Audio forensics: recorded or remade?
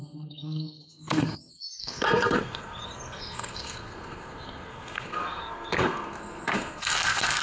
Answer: remade